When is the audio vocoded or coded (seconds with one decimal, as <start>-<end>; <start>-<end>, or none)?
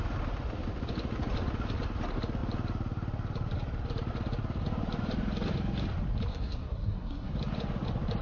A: 6.3-7.3